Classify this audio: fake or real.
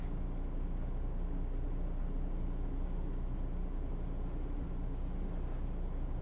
real